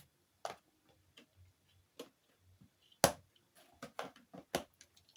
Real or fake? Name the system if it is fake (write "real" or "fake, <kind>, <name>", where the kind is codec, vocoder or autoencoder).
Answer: real